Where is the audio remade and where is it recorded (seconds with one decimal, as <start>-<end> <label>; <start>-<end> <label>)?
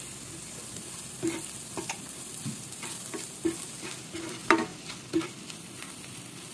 0.0-6.5 recorded